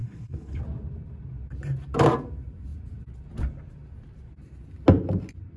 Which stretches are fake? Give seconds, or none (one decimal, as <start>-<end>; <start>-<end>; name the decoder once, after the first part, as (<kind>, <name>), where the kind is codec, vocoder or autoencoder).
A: 0.0-0.6 (codec, HILCodec)